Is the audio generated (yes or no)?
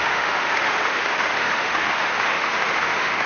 yes